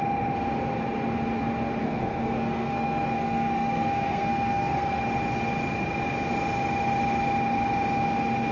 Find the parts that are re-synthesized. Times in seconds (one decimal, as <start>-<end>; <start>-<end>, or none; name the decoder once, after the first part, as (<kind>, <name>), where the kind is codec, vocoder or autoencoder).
1.8-5.0 (codec, SNAC)